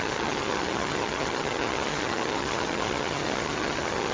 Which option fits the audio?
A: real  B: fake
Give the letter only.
B